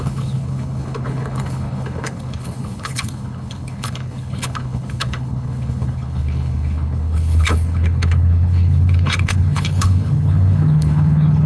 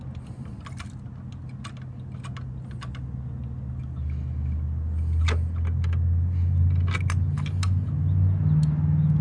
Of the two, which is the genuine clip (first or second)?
second